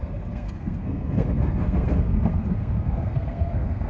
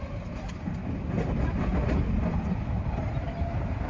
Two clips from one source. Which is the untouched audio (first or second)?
second